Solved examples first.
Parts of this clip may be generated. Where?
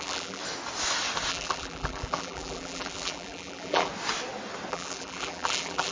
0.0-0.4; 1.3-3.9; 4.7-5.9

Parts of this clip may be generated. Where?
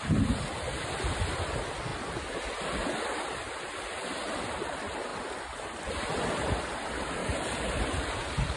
7.2-7.8